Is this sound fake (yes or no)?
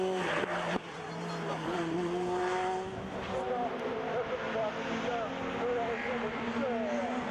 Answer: no